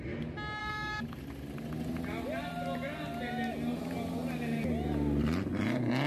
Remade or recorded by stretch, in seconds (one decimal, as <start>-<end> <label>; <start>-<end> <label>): 0.0-0.6 recorded; 0.6-1.2 remade; 1.2-6.1 recorded